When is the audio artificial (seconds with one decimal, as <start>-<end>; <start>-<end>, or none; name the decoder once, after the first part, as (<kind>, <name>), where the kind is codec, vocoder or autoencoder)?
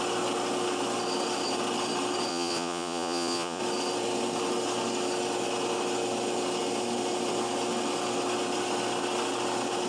2.3-3.6 (vocoder, Vocos)